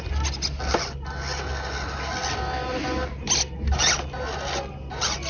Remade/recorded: recorded